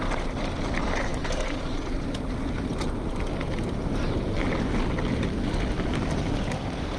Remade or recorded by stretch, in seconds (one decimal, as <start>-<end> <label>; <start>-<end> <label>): 0.0-7.0 recorded